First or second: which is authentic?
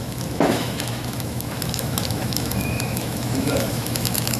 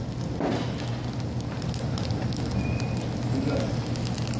second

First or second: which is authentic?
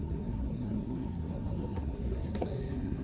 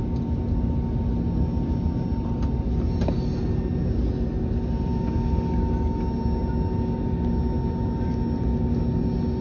second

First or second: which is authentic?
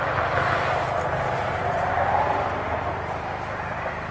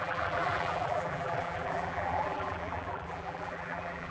first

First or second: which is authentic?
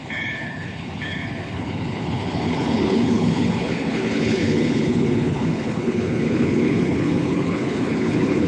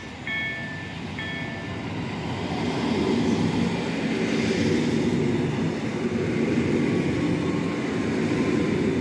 second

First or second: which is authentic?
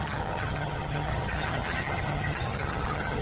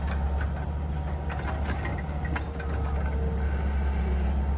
second